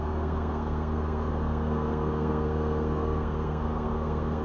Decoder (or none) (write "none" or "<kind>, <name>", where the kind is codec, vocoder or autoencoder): codec, SNAC